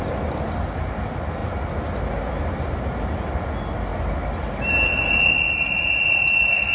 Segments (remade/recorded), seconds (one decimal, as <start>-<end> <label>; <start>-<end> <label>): 0.0-6.7 recorded

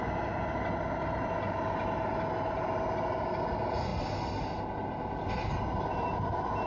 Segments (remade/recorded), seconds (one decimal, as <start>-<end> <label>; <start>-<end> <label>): 0.0-6.7 recorded

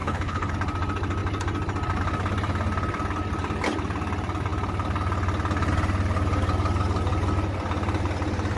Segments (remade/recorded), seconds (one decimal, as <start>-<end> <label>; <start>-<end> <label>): 0.0-0.5 remade; 0.5-8.6 recorded

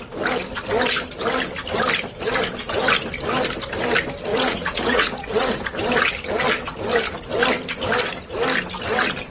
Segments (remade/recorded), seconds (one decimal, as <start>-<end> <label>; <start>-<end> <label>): 0.0-4.3 recorded; 4.3-5.6 remade; 5.6-9.3 recorded